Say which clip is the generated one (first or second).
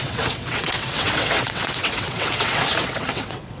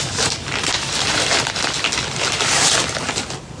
first